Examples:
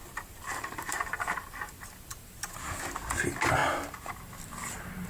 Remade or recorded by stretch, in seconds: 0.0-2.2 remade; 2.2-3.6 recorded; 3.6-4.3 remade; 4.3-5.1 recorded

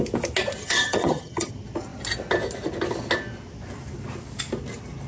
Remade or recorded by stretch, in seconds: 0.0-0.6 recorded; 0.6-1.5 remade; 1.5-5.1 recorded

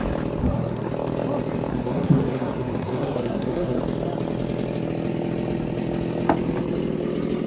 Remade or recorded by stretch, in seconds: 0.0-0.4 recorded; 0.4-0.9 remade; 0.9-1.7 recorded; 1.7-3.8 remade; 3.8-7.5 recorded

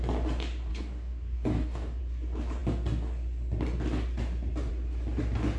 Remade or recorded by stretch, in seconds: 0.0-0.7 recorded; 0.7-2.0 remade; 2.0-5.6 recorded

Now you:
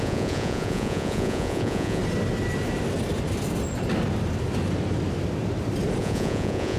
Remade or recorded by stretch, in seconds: 0.0-2.0 remade; 2.0-6.0 recorded; 6.0-6.8 remade

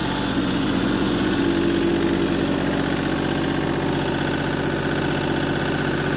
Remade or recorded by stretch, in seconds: 0.0-1.4 remade; 1.4-6.2 recorded

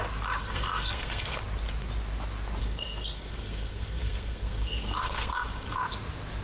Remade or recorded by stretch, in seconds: 0.0-0.4 recorded; 0.4-1.4 remade; 1.4-2.6 recorded; 2.6-5.9 remade; 5.9-6.4 recorded

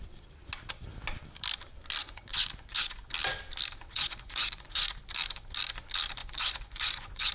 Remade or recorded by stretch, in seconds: 0.0-2.0 recorded; 2.0-3.1 remade; 3.1-3.9 recorded; 3.9-4.9 remade; 4.9-6.2 recorded; 6.2-7.3 remade